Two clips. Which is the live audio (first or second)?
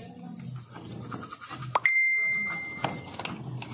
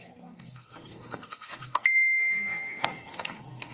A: first